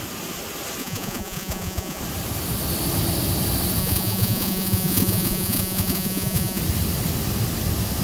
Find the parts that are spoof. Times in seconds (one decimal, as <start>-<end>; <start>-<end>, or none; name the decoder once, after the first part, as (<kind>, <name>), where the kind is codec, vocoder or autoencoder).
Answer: 0.8-2.0 (vocoder, Vocos); 3.8-6.6